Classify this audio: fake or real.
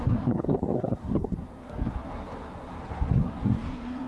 fake